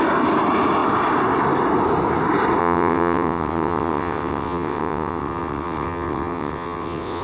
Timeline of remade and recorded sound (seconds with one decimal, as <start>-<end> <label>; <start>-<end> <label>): 0.0-2.6 recorded; 2.6-7.2 remade